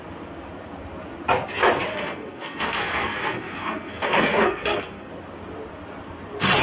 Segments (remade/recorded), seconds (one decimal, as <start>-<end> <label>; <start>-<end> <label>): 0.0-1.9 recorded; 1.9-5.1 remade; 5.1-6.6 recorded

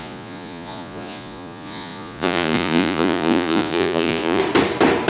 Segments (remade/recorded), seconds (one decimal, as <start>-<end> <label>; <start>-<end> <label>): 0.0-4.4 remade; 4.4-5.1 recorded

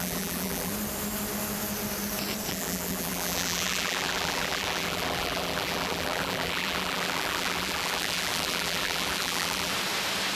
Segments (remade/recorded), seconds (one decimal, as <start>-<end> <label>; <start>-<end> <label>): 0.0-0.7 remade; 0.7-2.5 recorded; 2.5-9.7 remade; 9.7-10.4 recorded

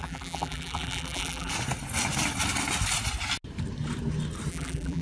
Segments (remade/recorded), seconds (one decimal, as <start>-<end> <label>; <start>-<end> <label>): 0.0-1.5 remade; 1.5-4.5 recorded; 4.5-5.0 remade

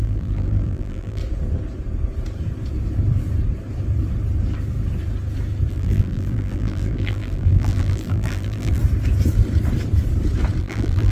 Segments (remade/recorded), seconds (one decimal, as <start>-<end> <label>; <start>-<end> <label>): 0.0-1.2 remade; 1.2-5.7 recorded; 5.7-8.8 remade; 8.8-10.6 recorded; 10.6-11.1 remade